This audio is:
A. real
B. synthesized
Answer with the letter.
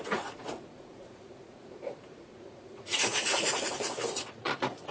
B